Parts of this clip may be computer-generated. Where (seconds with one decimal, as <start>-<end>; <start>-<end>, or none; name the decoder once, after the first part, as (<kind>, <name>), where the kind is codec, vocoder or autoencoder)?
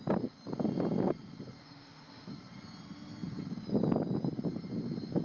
1.6-2.3 (autoencoder, DAC-VAE)